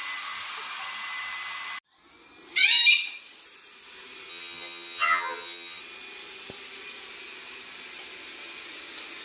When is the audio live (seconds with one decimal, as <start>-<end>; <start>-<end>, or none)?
0.0-4.3; 5.8-9.2